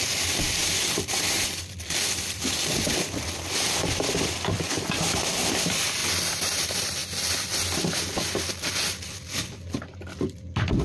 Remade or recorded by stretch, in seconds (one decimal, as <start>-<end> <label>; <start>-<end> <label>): 0.0-7.0 remade; 7.0-10.8 recorded